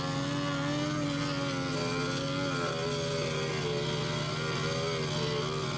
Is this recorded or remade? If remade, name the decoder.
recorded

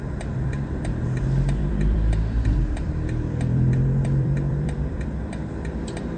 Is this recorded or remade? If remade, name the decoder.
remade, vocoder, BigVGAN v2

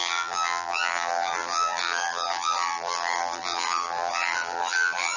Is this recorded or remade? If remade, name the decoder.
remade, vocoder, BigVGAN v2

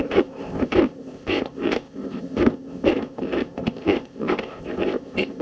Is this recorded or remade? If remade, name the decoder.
remade, codec, ZipCodec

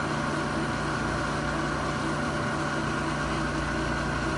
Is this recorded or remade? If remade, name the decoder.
recorded